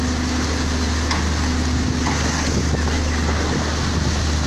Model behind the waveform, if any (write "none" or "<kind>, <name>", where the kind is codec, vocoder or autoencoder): none